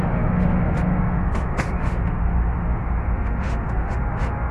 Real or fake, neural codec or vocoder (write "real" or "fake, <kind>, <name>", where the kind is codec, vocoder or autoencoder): fake, autoencoder, DAC-VAE